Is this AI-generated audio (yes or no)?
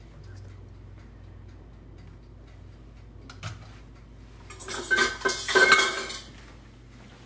no